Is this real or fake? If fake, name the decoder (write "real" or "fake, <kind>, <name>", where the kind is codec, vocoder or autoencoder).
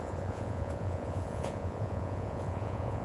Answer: fake, vocoder, Vocos